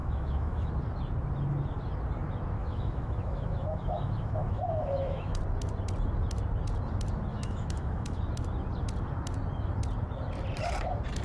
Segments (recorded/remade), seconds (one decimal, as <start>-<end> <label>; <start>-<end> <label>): 0.0-0.7 remade; 0.7-2.6 recorded; 2.6-5.4 remade; 5.4-7.3 recorded; 7.3-8.2 remade; 8.2-11.2 recorded